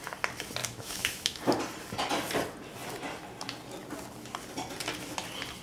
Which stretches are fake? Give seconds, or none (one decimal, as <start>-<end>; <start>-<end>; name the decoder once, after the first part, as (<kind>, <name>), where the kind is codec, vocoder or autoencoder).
0.6-1.4 (autoencoder, DAC-VAE)